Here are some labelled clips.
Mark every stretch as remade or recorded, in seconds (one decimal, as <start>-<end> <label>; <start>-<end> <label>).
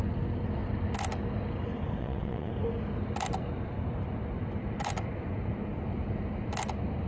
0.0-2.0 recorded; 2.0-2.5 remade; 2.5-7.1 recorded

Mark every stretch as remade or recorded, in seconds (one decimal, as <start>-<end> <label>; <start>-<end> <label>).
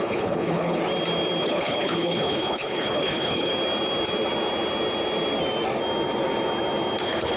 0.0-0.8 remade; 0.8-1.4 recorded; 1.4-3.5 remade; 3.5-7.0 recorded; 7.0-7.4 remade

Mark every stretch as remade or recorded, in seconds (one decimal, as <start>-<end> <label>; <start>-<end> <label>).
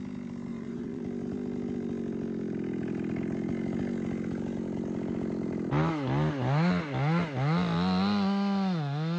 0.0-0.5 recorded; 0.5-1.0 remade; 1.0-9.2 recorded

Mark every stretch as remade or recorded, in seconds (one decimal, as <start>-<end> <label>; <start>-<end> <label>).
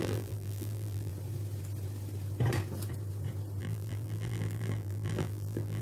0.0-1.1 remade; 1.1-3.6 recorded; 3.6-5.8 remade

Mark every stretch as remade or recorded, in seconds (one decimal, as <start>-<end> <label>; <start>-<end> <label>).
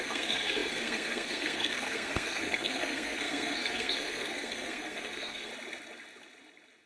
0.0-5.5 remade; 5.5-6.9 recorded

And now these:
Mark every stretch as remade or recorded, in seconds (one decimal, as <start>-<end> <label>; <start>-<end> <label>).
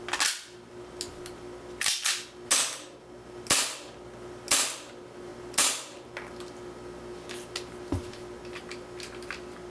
0.0-9.7 recorded